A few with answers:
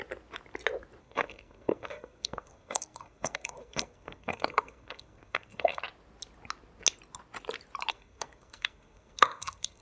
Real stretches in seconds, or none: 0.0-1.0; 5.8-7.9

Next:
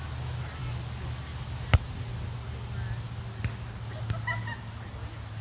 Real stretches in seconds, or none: 0.0-5.4

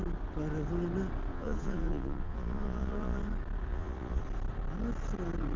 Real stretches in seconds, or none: 0.0-1.3; 3.2-3.7; 4.2-5.6

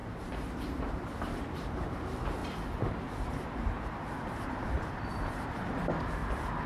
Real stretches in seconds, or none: 2.4-3.3; 6.2-6.7

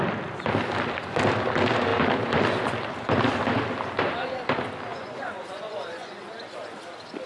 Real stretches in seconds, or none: 0.0-4.9; 6.1-7.3

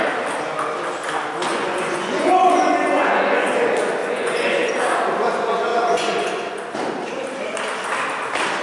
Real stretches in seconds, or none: 0.0-1.5; 3.5-4.0; 4.7-5.7; 6.6-8.6

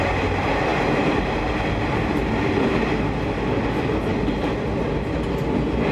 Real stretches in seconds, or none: 0.0-0.7; 1.4-4.1; 4.8-5.9

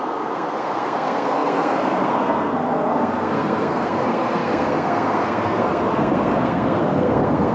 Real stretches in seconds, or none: none